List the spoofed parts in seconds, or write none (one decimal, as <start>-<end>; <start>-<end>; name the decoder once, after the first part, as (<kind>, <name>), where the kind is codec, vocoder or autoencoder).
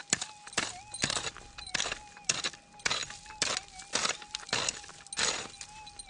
none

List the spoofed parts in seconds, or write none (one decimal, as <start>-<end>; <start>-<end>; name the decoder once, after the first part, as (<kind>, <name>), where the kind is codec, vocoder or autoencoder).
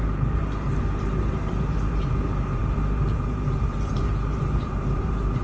0.0-5.4 (vocoder, BigVGAN v2)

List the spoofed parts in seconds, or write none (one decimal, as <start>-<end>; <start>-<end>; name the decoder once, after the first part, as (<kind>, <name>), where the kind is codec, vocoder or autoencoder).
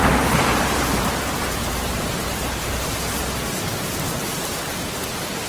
0.0-2.9 (vocoder, BigVGAN v2)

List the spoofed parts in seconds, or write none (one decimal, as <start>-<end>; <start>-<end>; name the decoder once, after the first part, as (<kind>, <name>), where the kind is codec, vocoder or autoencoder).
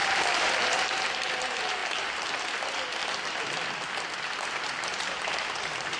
0.0-1.8 (vocoder, BigVGAN v2); 2.5-3.0; 4.6-6.0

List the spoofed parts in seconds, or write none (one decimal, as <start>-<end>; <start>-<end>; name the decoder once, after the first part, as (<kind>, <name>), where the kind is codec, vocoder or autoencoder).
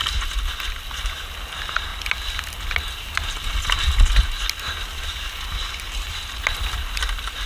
none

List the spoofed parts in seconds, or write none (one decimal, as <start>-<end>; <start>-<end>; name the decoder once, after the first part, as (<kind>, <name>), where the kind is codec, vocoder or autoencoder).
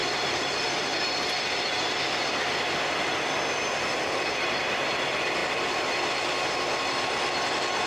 none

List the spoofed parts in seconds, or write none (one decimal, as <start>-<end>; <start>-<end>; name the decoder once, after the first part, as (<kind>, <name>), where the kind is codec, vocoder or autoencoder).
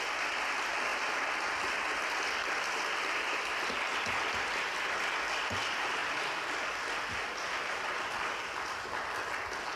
6.0-7.2 (vocoder, BigVGAN v2)